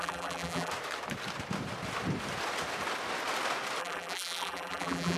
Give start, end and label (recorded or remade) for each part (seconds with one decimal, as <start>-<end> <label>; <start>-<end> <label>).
0.0-0.7 remade; 0.7-3.8 recorded; 3.8-5.2 remade